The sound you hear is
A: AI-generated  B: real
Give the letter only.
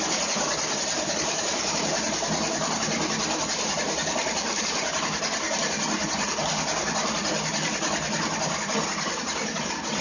B